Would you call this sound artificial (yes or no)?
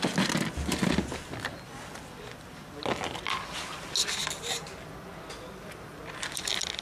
no